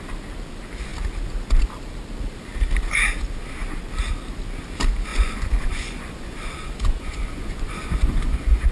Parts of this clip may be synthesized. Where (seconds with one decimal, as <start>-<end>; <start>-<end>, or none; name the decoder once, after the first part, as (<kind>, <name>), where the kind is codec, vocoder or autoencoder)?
5.1-8.7 (vocoder, Vocos)